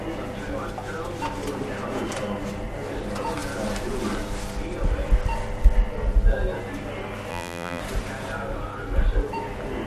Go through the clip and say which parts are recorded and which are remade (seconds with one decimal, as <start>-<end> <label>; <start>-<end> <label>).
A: 0.0-7.3 recorded; 7.3-7.8 remade; 7.8-9.9 recorded